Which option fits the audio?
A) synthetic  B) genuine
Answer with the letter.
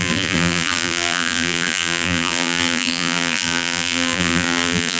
A